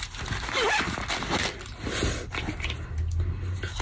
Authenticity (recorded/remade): recorded